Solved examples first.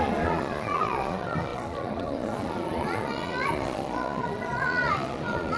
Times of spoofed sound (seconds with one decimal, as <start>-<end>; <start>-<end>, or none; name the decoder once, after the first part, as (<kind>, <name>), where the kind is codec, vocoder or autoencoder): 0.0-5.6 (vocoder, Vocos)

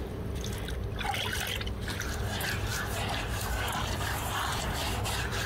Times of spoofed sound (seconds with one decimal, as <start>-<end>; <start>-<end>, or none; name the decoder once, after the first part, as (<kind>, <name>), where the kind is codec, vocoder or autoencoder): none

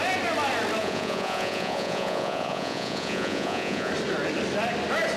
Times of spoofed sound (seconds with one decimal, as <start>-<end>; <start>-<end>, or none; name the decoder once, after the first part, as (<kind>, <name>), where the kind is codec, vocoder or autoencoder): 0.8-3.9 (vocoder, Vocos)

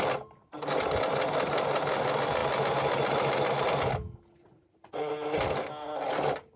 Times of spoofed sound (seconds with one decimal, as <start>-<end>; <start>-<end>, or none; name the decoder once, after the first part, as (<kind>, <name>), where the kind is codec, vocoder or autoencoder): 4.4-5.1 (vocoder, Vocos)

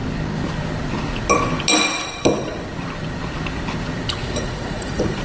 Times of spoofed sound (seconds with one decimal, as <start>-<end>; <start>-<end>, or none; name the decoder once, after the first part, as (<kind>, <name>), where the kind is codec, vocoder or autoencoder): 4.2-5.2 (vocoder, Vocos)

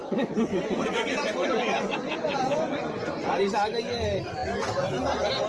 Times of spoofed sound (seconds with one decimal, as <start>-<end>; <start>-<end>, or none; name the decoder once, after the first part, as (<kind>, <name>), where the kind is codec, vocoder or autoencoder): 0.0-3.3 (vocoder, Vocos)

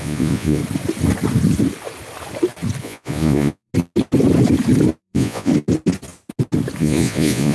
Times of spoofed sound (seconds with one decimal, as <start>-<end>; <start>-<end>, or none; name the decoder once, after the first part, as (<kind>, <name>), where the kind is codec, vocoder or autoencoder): 0.0-0.6 (vocoder, Vocos); 2.8-3.7; 5.0-5.5; 6.8-7.5

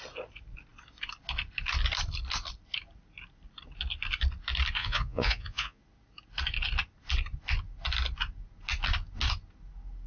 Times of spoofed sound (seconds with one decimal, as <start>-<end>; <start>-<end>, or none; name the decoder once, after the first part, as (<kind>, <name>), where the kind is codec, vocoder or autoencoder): 4.8-5.8 (vocoder, Vocos)